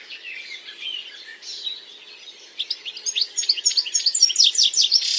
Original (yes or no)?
yes